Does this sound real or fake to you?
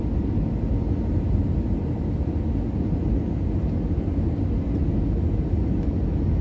real